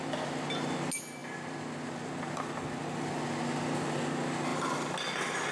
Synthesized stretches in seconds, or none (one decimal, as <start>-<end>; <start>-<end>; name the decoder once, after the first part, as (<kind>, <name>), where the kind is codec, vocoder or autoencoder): none